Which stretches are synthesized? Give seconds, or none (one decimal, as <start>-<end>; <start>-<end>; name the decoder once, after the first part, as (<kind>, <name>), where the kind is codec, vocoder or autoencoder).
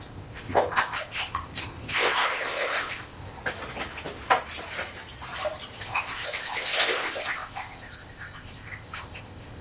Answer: 0.0-3.4 (codec, ZipCodec); 5.8-9.6